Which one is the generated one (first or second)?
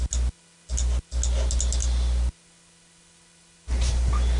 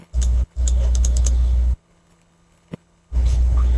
second